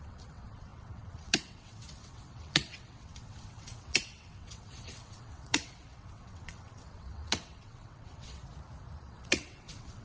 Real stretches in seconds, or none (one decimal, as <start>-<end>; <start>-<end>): 8.4-9.0